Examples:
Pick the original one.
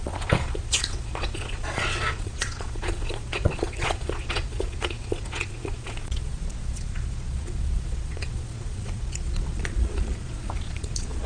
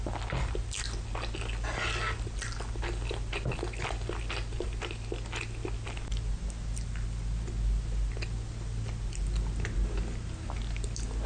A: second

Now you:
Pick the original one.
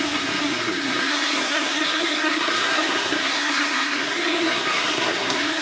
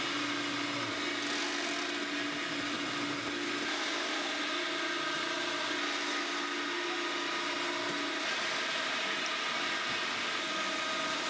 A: second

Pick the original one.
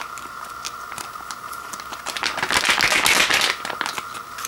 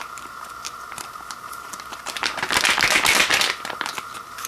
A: first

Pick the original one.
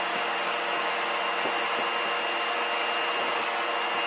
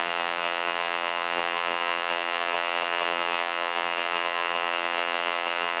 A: first